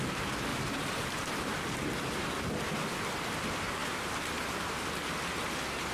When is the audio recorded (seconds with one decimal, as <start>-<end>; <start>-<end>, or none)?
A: 0.0-0.5; 1.6-3.8; 4.3-5.9